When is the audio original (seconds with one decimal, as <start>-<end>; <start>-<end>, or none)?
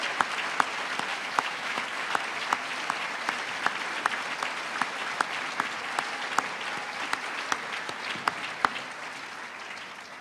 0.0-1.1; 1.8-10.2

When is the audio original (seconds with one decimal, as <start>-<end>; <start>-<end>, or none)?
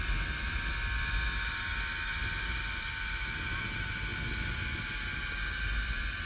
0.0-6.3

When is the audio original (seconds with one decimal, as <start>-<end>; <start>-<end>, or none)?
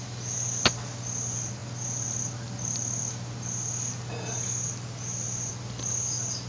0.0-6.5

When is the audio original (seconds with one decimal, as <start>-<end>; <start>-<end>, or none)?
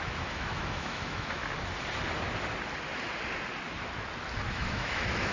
1.4-4.5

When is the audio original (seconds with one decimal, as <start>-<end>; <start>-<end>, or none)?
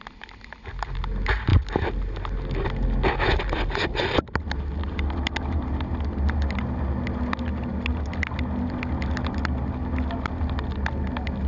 0.0-11.5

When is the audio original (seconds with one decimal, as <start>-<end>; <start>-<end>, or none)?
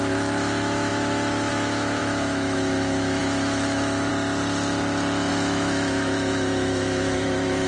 4.1-5.3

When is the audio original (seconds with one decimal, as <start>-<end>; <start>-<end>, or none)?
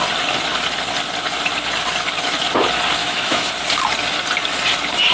0.0-3.0; 3.5-5.1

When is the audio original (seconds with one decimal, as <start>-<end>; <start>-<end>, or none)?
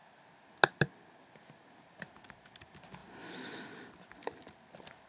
0.0-5.1